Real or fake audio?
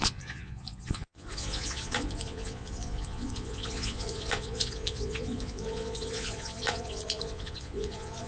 fake